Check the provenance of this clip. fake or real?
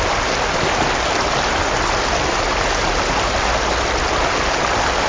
real